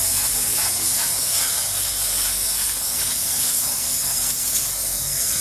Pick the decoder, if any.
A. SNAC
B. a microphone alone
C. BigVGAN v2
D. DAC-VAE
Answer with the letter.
A